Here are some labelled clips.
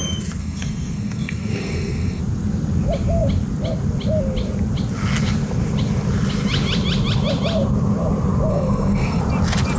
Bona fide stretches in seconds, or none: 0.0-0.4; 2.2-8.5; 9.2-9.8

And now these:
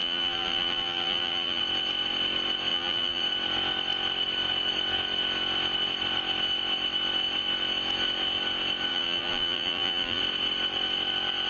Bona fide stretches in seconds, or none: 1.6-2.7; 3.2-8.9; 10.2-11.5

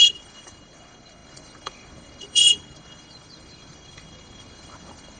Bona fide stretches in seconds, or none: none

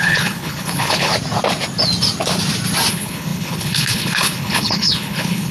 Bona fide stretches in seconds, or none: 1.1-2.9

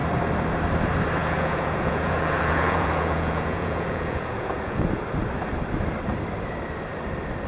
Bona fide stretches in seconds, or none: 0.0-1.2; 4.9-7.5

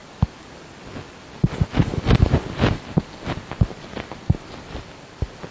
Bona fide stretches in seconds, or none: 0.0-2.2